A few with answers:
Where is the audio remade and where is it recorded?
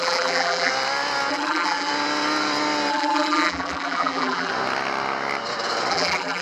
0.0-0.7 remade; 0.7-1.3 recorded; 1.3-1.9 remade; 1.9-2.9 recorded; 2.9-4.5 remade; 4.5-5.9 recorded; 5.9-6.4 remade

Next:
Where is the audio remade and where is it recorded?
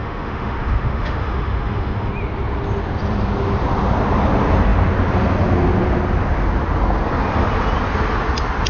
0.0-2.1 remade; 2.1-8.7 recorded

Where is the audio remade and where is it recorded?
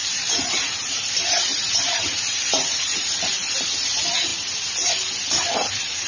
0.0-1.1 remade; 1.1-1.5 recorded; 1.5-3.0 remade; 3.0-6.1 recorded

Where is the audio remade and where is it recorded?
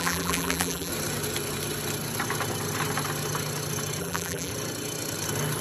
0.0-0.9 remade; 0.9-4.0 recorded; 4.0-4.5 remade; 4.5-5.6 recorded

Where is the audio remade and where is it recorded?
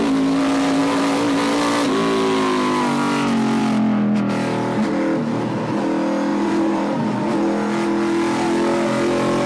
0.0-6.3 recorded; 6.3-7.0 remade; 7.0-9.5 recorded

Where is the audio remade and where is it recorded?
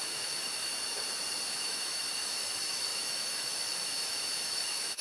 0.0-0.7 remade; 0.7-1.5 recorded; 1.5-5.0 remade